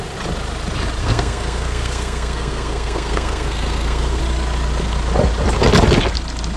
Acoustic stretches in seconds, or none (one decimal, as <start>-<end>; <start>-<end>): 0.0-1.0; 4.2-6.6